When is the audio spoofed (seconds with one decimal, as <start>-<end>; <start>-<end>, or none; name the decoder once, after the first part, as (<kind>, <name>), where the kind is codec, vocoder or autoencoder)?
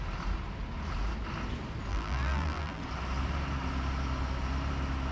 1.9-2.8 (vocoder, BigVGAN v2)